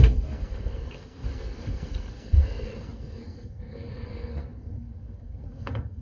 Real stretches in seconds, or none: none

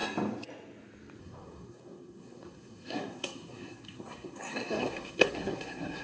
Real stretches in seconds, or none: 0.0-1.2

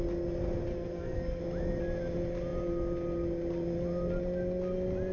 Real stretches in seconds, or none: 0.0-0.7; 1.4-5.1